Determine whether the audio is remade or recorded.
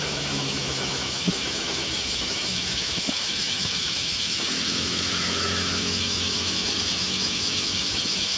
remade